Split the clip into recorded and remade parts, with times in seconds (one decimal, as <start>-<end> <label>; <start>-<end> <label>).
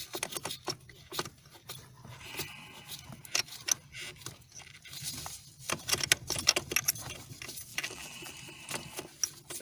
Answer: 0.0-7.7 recorded; 7.7-8.3 remade; 8.3-9.6 recorded